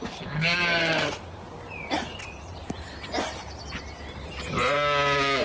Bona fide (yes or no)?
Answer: yes